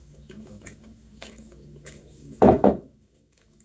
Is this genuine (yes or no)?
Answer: no